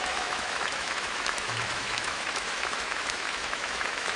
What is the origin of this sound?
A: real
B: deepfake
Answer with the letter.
B